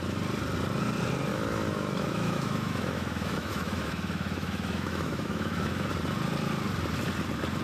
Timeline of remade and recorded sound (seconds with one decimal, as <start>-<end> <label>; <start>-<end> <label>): 0.0-1.3 recorded; 1.3-5.9 remade; 5.9-7.6 recorded